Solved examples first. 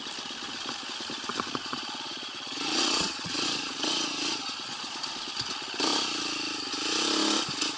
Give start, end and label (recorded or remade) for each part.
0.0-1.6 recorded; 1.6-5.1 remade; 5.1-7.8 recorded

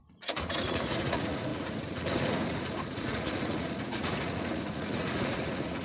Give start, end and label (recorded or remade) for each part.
0.0-5.8 remade

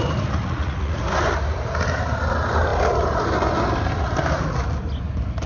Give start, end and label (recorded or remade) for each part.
0.0-0.4 recorded; 0.4-1.0 remade; 1.0-5.5 recorded

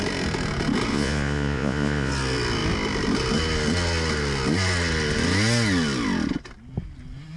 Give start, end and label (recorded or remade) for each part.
0.0-0.9 recorded; 0.9-2.1 remade; 2.1-7.4 recorded

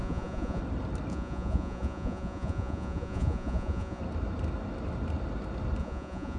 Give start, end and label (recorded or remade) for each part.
0.0-0.6 remade; 0.6-1.1 recorded; 1.1-4.0 remade; 4.0-5.8 recorded; 5.8-6.4 remade